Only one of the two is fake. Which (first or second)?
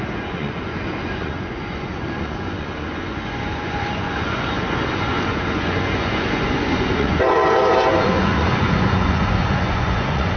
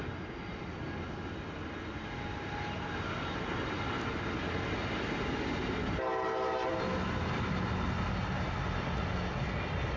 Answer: first